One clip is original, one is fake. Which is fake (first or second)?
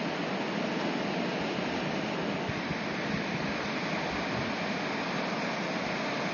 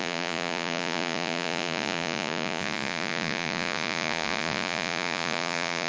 second